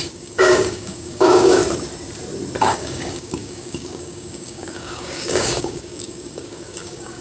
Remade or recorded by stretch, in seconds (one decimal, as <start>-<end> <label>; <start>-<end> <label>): 0.0-1.6 remade; 1.6-2.6 recorded; 2.6-7.2 remade